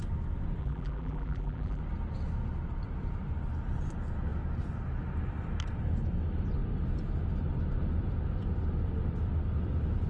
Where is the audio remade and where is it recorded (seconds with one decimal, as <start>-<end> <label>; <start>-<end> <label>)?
0.0-0.6 recorded; 0.6-1.8 remade; 1.8-10.1 recorded